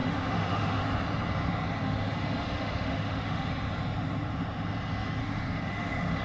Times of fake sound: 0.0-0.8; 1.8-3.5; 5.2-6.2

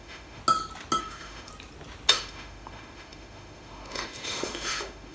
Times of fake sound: 0.0-0.4; 1.0-1.5; 2.1-5.1

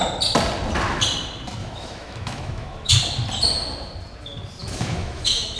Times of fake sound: 1.6-2.9; 4.6-5.6

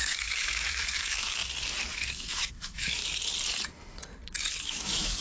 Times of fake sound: 0.0-1.4; 2.1-3.0; 4.6-5.2

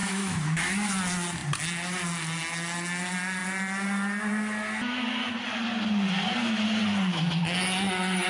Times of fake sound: 0.0-0.9